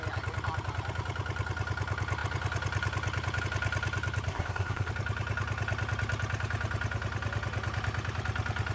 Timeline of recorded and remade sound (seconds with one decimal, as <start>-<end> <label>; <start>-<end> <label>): 0.0-4.3 recorded; 4.3-4.9 remade; 4.9-8.7 recorded